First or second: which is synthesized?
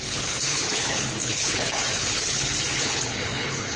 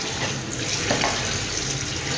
first